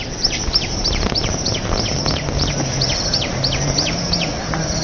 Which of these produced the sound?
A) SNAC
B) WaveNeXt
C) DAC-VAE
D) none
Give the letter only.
D